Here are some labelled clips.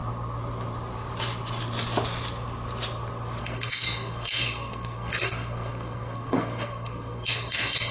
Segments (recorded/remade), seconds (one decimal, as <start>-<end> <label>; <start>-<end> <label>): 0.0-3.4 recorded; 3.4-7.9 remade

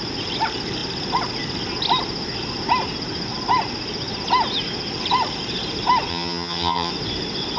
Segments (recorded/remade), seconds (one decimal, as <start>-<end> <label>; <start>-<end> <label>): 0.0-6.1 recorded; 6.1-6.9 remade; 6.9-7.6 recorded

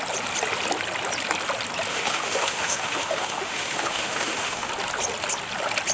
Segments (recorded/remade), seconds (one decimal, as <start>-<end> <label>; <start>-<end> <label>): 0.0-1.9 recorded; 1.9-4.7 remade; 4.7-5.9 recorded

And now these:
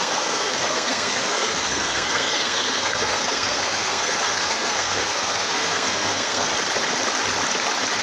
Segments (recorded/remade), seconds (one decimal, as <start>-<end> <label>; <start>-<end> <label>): 0.0-6.5 remade; 6.5-8.0 recorded

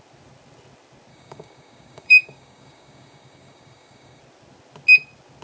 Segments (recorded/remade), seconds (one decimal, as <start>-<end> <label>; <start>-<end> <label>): 0.0-1.1 recorded; 1.1-4.2 remade; 4.2-5.4 recorded

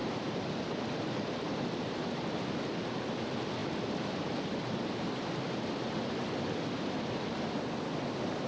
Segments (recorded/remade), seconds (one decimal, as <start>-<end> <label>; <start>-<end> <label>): 0.0-2.5 remade; 2.5-3.6 recorded; 3.6-5.9 remade; 5.9-8.5 recorded